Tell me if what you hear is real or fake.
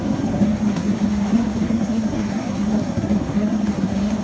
fake